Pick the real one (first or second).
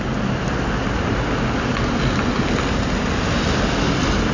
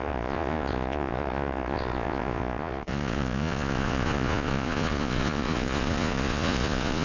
first